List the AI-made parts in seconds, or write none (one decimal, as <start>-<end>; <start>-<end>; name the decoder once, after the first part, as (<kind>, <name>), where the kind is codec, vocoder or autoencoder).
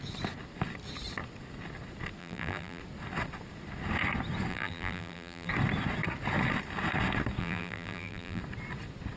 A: 2.2-2.8 (vocoder, BigVGAN v2); 4.5-5.5; 7.4-8.4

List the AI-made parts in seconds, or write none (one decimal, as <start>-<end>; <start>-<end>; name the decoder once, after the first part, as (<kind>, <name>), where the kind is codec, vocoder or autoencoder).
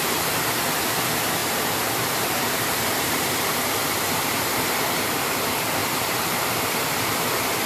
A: 1.4-5.2 (vocoder, BigVGAN v2); 5.8-6.7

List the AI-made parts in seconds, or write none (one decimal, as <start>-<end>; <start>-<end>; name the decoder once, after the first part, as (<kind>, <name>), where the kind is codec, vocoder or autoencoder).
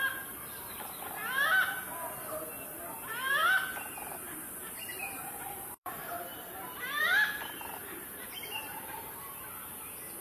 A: 4.9-9.2 (vocoder, BigVGAN v2)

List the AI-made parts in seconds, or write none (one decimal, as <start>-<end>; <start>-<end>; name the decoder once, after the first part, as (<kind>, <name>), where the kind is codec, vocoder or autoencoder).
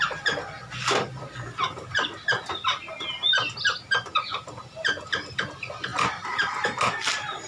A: 5.9-6.6 (vocoder, BigVGAN v2)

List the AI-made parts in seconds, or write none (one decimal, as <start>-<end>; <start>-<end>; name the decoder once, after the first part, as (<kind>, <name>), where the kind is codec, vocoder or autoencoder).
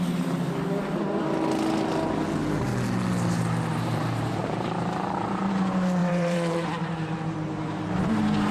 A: 3.7-5.5 (vocoder, BigVGAN v2); 6.0-8.0